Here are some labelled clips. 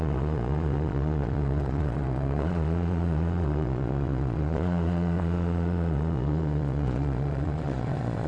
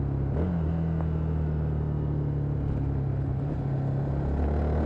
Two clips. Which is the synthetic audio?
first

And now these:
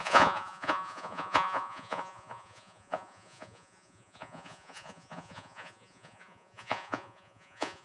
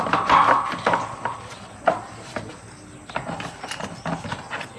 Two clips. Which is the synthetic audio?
first